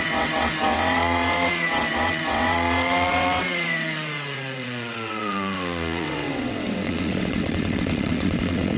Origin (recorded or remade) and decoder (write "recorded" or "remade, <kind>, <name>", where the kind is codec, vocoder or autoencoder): remade, vocoder, WaveNeXt